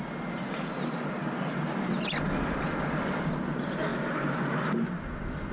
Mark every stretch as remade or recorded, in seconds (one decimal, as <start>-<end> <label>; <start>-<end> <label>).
0.0-5.5 recorded